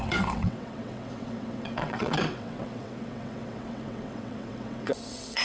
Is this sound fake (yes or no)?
yes